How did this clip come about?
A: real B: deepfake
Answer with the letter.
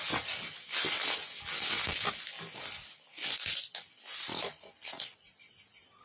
A